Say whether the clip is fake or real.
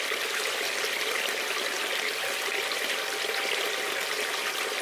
real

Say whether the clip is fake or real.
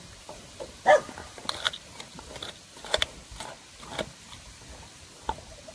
real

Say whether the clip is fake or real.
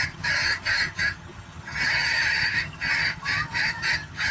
fake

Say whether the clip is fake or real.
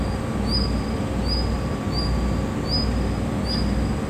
real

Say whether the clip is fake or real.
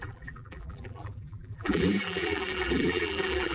fake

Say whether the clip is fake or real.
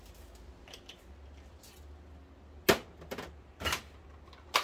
real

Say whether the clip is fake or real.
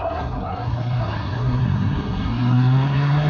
fake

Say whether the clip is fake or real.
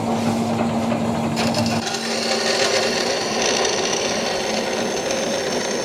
real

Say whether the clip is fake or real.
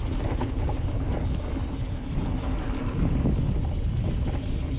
real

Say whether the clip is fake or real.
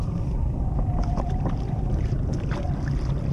real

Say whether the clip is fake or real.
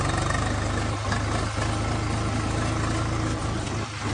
real